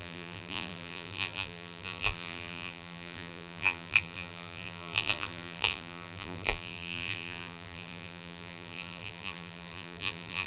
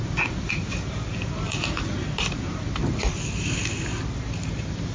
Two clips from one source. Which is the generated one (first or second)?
first